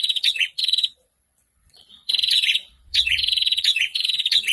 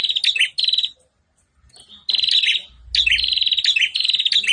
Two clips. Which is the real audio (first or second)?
second